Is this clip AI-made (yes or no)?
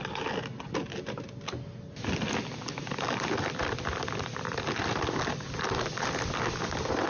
no